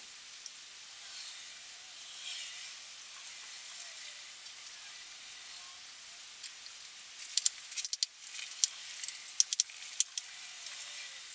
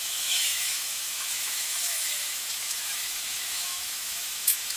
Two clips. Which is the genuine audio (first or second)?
first